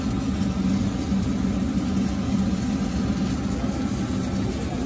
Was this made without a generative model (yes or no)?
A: yes